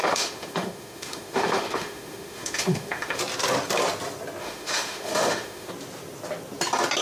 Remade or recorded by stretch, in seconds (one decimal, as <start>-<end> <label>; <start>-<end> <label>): 0.0-3.2 remade; 3.2-4.4 recorded; 4.4-5.7 remade; 5.7-7.0 recorded